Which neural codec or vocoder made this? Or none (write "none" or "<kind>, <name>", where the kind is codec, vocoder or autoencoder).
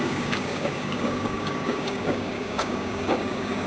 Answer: codec, DAC